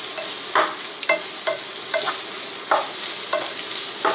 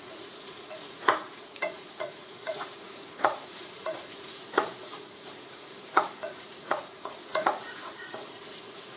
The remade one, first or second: second